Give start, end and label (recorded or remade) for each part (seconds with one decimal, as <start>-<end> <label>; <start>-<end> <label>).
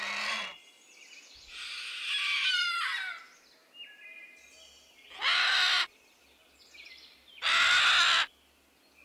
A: 0.0-9.0 recorded